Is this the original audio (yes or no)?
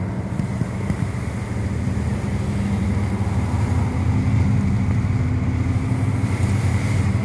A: yes